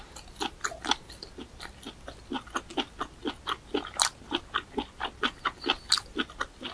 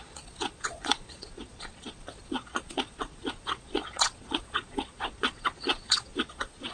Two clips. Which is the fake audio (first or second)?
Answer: second